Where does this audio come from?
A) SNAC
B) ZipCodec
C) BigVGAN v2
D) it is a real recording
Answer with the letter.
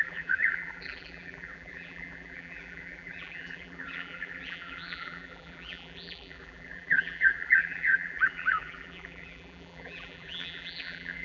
C